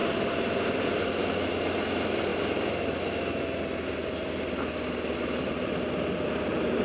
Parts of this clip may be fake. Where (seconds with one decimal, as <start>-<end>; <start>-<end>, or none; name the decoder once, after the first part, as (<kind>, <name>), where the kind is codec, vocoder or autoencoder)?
2.3-6.8 (vocoder, BigVGAN v2)